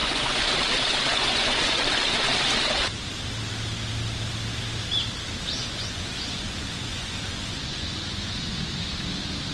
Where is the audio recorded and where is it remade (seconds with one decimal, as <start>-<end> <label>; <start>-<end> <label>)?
0.0-0.5 remade; 0.5-1.1 recorded; 1.1-1.8 remade; 1.8-5.6 recorded; 5.6-8.9 remade; 8.9-9.5 recorded